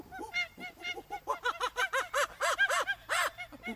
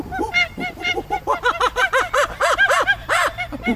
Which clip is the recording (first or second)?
first